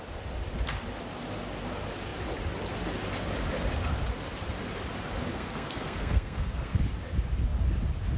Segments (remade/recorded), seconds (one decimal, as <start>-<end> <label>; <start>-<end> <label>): 0.0-5.3 recorded; 5.3-6.8 remade; 6.8-8.2 recorded